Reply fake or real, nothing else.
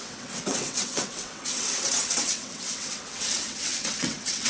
fake